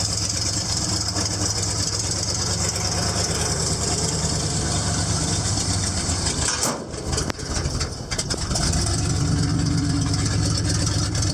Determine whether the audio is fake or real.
real